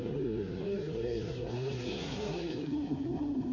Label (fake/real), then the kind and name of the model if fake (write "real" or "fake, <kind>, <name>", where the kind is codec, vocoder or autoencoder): fake, codec, SNAC